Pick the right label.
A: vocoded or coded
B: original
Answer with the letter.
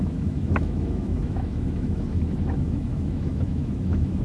A